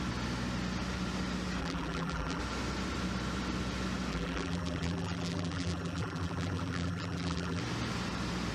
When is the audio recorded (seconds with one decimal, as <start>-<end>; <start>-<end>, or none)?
0.0-1.6; 2.4-4.1; 7.6-8.5